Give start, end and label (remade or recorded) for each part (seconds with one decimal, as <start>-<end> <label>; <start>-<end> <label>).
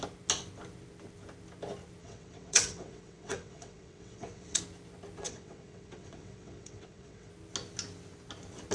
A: 0.0-2.0 recorded; 2.0-4.6 remade; 4.6-5.2 recorded; 5.2-7.3 remade; 7.3-8.7 recorded